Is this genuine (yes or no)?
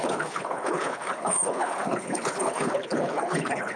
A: no